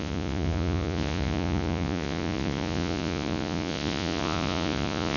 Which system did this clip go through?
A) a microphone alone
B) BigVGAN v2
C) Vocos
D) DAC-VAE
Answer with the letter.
C